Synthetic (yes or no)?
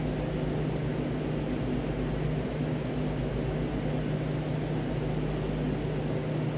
no